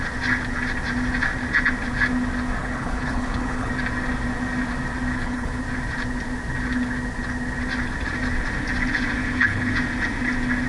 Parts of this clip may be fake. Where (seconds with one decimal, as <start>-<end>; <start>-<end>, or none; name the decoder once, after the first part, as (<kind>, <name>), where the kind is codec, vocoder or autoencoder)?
2.6-3.7 (codec, HILCodec); 5.1-5.6; 9.2-9.7